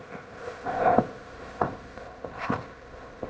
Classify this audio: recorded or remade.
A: remade